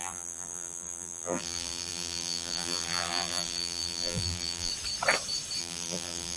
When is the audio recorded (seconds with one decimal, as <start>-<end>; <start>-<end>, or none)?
4.7-5.6